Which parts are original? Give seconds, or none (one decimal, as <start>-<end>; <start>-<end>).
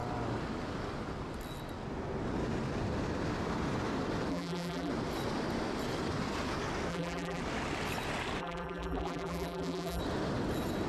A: 0.0-4.3; 4.9-6.9; 7.4-8.4; 10.0-10.9